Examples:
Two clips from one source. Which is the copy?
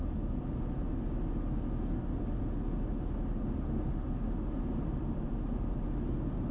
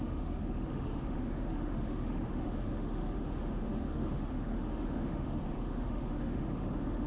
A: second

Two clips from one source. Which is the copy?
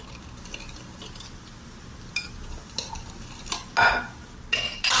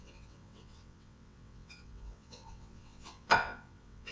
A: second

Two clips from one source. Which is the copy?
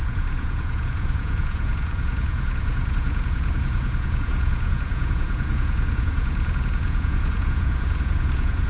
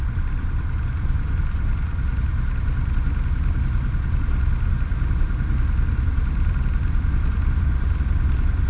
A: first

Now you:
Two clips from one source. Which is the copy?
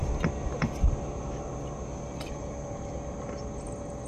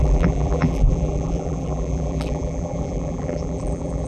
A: second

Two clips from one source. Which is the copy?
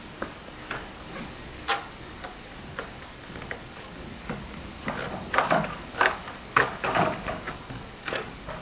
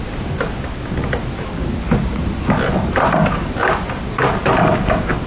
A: first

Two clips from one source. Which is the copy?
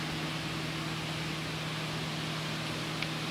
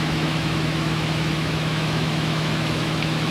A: second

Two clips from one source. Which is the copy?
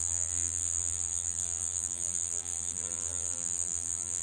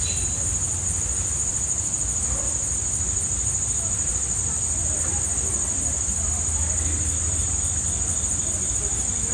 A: first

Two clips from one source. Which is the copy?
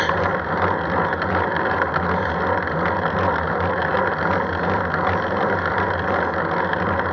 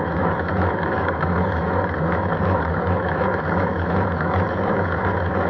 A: second